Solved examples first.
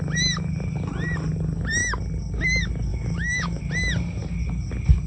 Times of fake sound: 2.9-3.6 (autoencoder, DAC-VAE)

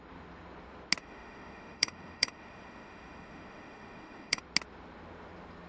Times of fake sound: 1.0-4.4 (autoencoder, DAC-VAE)

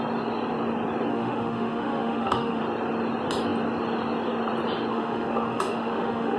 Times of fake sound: 1.1-2.6 (autoencoder, DAC-VAE); 4.9-6.4

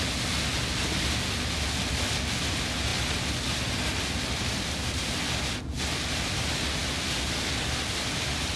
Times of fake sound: none

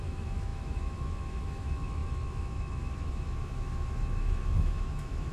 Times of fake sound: 0.0-5.3 (autoencoder, DAC-VAE)